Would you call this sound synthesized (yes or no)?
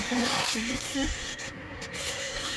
yes